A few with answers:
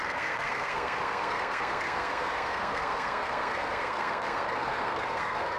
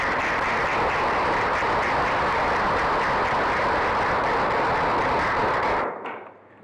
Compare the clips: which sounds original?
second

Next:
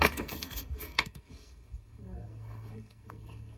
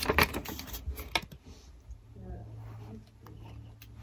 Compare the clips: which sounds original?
second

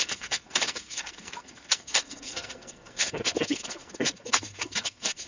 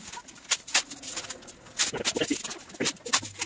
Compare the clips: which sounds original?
second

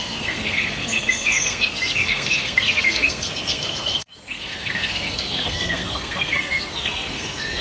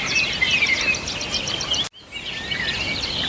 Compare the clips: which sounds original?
second